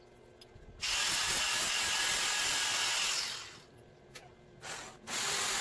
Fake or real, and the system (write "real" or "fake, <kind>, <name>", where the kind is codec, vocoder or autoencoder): real